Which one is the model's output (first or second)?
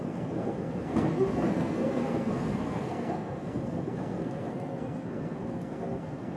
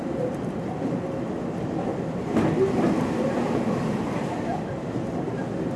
first